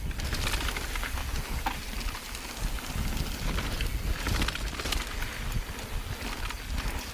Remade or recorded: recorded